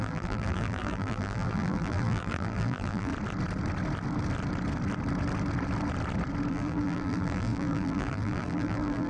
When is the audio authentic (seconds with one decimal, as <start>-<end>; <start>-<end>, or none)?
3.1-6.5